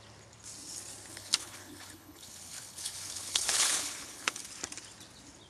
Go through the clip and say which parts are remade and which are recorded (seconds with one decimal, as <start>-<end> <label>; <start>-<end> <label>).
0.0-1.1 recorded; 1.1-4.4 remade; 4.4-5.5 recorded